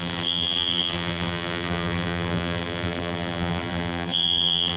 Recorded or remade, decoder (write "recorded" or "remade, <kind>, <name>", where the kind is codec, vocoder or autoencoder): remade, vocoder, BigVGAN v2